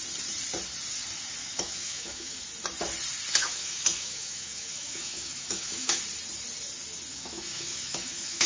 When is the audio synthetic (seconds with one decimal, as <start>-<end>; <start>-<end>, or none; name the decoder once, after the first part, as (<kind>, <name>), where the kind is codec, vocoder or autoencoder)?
1.4-2.4 (autoencoder, DAC-VAE); 3.4-6.0; 7.1-8.5